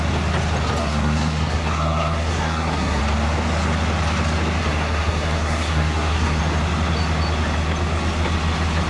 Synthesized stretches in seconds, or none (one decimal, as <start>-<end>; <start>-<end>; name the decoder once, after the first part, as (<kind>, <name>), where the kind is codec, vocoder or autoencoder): 0.8-3.0 (codec, SNAC); 4.6-6.4